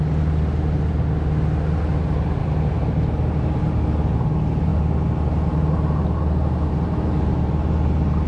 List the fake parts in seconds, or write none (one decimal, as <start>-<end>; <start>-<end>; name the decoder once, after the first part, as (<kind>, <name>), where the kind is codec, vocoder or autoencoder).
2.4-3.6 (vocoder, BigVGAN v2)